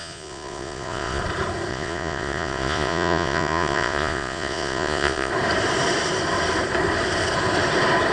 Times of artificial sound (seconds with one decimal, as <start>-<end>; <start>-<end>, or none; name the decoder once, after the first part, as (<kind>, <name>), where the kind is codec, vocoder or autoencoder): 0.0-1.2 (vocoder, Vocos); 1.7-5.3